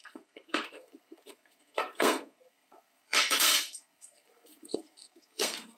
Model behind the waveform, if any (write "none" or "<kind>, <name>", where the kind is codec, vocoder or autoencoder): codec, SNAC